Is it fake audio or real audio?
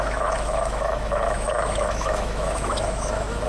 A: fake